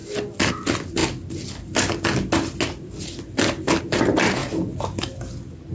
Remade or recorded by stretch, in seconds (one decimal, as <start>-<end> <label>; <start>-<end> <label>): 0.0-5.7 recorded